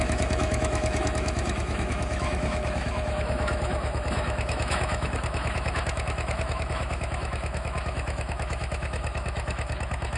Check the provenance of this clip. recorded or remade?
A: remade